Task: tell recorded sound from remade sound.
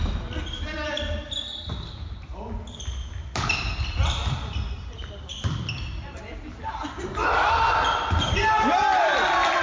recorded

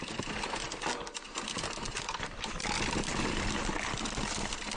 recorded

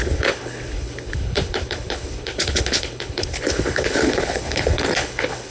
remade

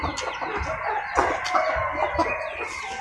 recorded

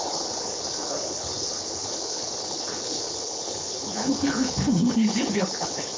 remade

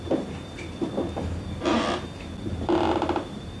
recorded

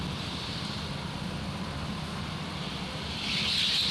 recorded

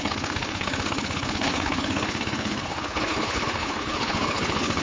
remade